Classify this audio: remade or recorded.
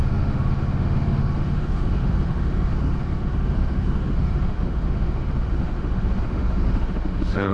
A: remade